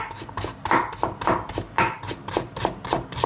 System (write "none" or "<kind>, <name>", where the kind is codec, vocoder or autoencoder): none